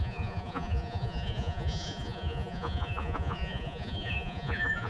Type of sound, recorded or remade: remade